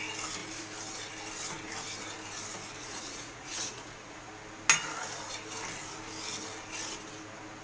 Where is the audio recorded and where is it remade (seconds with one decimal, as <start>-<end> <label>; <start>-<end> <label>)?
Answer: 0.0-2.8 recorded; 2.8-4.3 remade; 4.3-7.6 recorded

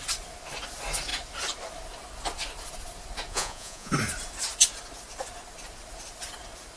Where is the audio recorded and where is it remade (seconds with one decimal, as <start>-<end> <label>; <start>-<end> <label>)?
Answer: 0.0-3.3 recorded; 3.3-3.9 remade; 3.9-6.8 recorded